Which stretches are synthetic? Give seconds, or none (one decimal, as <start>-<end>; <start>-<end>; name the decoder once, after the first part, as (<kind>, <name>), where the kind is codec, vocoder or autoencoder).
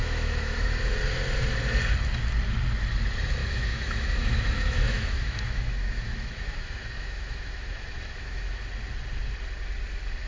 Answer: 0.0-0.9 (autoencoder, DAC-VAE); 3.4-8.6